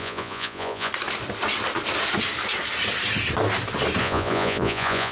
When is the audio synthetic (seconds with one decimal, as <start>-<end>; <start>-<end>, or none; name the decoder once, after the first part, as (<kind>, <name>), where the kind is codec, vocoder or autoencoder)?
0.0-0.9 (vocoder, Vocos); 4.0-5.1